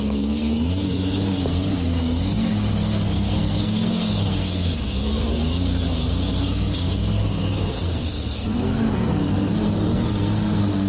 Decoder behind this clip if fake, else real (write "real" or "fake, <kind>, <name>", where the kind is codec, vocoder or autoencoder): fake, codec, SNAC